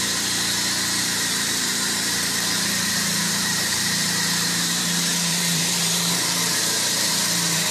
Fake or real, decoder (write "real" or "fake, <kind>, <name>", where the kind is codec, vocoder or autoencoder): fake, vocoder, BigVGAN v2